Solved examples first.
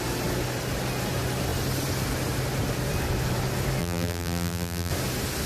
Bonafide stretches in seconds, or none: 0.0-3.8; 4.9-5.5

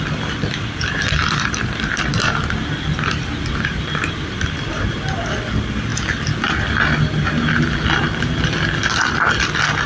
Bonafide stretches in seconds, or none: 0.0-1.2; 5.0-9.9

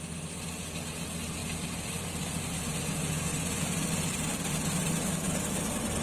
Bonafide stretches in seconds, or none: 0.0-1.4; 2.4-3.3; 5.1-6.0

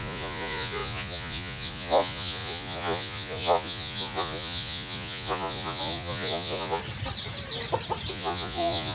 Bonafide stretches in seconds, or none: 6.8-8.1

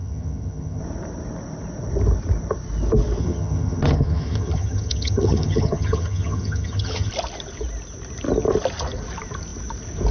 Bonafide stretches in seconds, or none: 0.8-3.2; 7.1-10.1

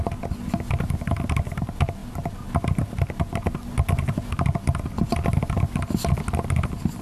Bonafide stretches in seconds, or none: 0.0-7.0

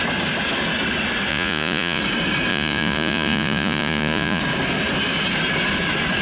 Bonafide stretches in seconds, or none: 0.0-1.3; 2.0-2.5; 4.4-6.2